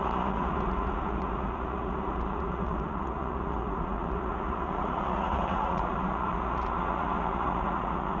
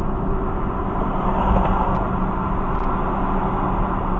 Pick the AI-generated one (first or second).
first